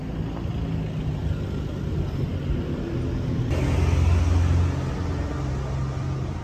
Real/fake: real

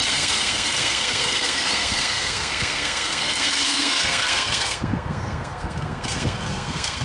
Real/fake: fake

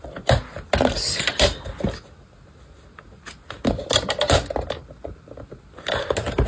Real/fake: real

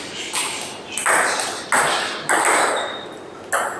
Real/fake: real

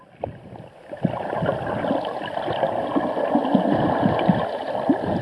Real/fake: real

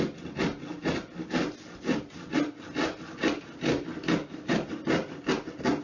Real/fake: real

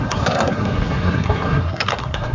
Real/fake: fake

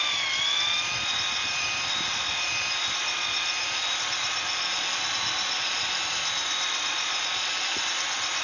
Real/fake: real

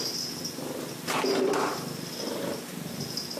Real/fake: real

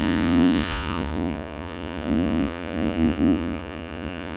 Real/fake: fake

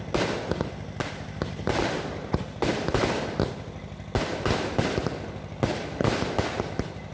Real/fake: real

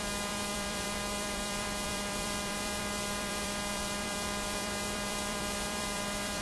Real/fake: fake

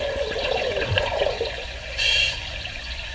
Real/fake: fake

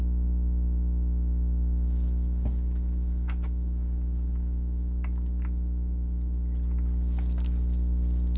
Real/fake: real